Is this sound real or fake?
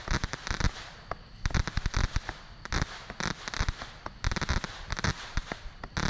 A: real